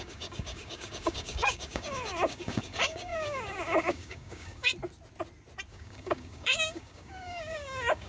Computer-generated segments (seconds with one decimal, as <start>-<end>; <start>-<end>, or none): 0.0-4.7; 5.7-8.1